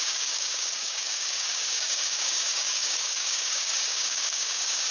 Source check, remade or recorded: remade